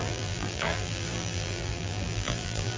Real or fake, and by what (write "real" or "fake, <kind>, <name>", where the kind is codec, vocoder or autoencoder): fake, vocoder, BigVGAN v2